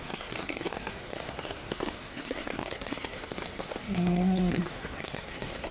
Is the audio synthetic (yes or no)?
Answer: yes